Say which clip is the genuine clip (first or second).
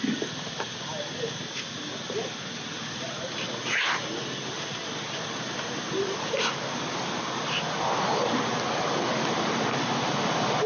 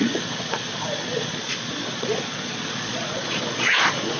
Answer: first